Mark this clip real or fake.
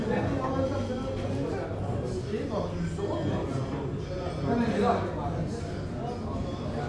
real